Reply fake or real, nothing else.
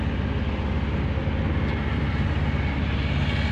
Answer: real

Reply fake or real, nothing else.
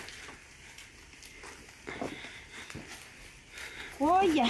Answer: real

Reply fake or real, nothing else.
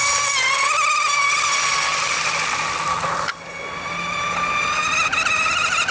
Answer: real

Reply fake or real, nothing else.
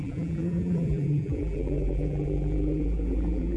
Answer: fake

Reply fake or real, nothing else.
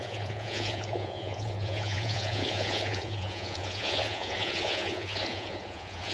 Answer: fake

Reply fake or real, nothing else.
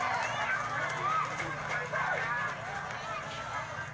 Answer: real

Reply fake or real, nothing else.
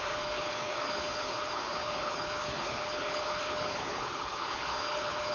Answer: fake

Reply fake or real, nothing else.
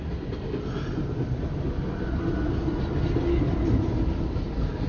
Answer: real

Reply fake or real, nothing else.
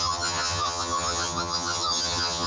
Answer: fake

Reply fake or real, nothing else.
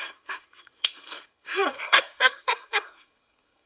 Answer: fake